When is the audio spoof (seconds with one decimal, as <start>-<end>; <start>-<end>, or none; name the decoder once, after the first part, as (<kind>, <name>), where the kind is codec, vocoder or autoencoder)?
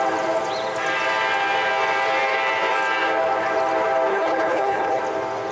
4.1-5.0 (codec, HILCodec)